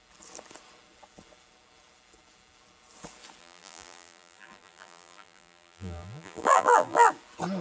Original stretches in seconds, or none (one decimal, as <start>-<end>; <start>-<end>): 0.0-3.4; 7.1-7.6